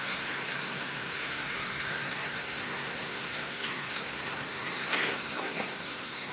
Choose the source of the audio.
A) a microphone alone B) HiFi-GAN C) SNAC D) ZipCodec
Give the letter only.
C